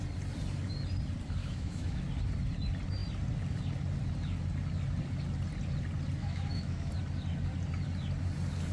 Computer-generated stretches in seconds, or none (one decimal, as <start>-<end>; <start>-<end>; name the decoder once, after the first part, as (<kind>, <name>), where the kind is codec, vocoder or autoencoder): 1.4-2.0 (autoencoder, DAC-VAE); 6.2-6.9